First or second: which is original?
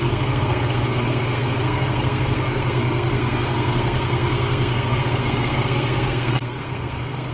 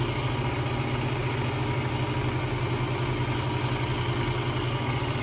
second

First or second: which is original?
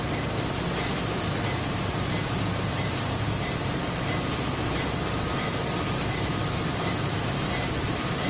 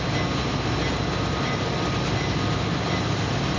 second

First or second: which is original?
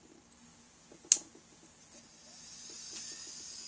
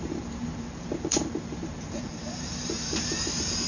first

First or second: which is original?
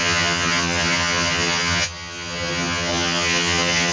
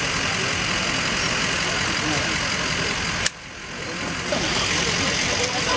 second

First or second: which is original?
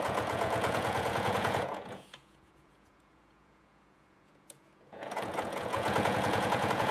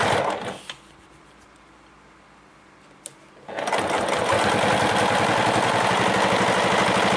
second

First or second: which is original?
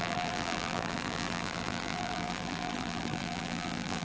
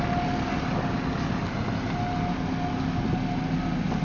second